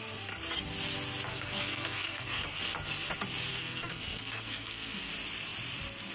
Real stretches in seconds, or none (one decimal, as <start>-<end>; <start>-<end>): 0.0-1.3; 2.6-3.5; 5.1-6.1